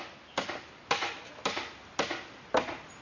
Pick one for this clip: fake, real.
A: real